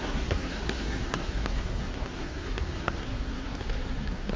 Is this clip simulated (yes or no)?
yes